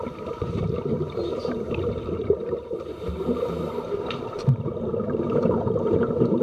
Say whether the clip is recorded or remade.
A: remade